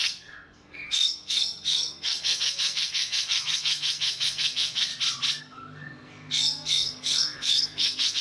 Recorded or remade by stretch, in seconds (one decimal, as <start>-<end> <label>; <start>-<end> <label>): 0.0-4.9 remade; 4.9-5.4 recorded; 5.4-8.2 remade